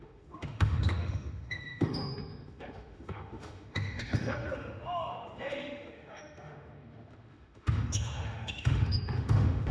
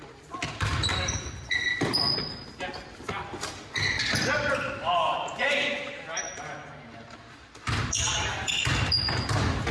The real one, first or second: second